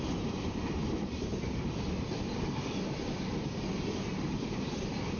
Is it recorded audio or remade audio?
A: recorded